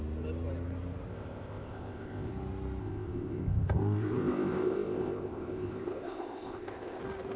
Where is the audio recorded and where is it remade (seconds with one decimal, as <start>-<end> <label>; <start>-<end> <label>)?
0.0-1.1 recorded; 1.1-2.3 remade; 2.3-2.8 recorded; 2.8-7.0 remade; 7.0-7.4 recorded